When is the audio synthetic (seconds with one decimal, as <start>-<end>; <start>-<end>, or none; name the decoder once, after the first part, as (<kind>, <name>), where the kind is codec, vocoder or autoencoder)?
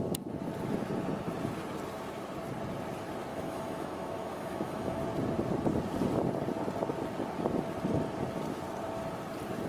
3.3-5.0 (autoencoder, DAC-VAE)